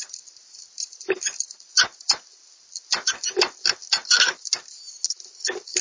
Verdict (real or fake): real